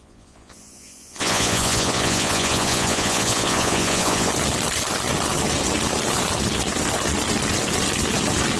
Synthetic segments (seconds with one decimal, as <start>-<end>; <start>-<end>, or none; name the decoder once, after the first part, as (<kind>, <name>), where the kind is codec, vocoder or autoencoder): 0.0-4.3 (vocoder, Vocos)